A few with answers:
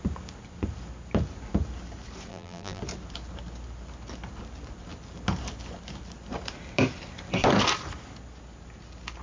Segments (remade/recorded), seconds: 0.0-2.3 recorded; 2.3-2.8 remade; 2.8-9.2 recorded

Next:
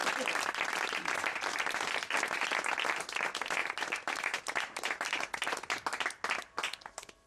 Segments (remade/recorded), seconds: 0.0-7.3 recorded

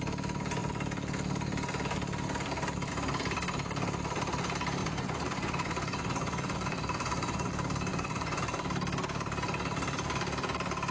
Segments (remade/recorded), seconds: 0.0-4.8 recorded; 4.8-7.5 remade; 7.5-7.9 recorded; 7.9-8.4 remade; 8.4-10.9 recorded

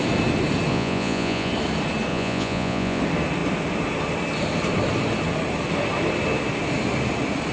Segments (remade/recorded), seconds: 0.0-0.7 recorded; 0.7-1.5 remade; 1.5-2.1 recorded; 2.1-3.0 remade; 3.0-7.5 recorded